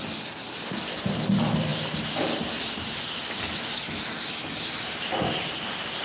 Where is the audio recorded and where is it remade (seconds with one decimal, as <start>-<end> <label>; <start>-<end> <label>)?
0.0-6.0 recorded